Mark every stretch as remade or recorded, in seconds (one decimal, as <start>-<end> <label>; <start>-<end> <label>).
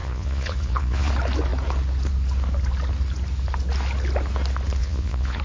0.0-1.1 remade; 1.1-4.8 recorded; 4.8-5.4 remade